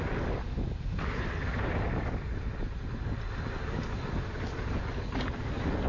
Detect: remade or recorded recorded